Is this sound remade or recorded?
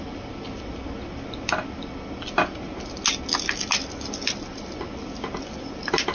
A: recorded